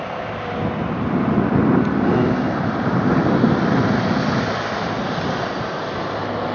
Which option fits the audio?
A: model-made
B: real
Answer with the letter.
B